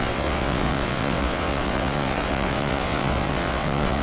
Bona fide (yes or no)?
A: no